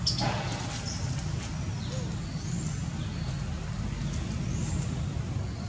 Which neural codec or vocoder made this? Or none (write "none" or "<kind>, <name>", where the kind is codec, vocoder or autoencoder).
none